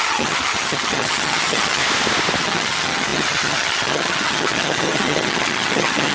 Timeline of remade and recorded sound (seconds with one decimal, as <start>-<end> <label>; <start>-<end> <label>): 0.0-1.8 remade; 1.8-2.4 recorded; 2.4-6.1 remade